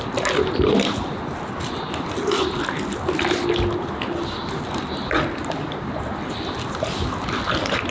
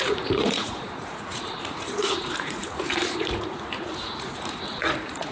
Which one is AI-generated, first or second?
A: second